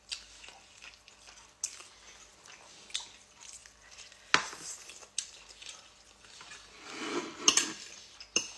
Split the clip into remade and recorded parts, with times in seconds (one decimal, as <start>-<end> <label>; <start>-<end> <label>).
0.0-8.6 recorded